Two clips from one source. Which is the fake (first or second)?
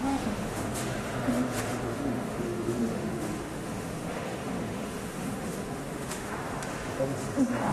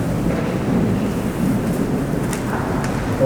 first